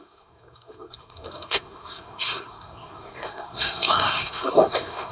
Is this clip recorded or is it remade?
remade